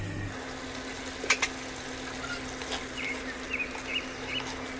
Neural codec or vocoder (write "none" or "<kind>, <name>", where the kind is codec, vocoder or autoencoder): none